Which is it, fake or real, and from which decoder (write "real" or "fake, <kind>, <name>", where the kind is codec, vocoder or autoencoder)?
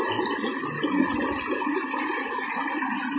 real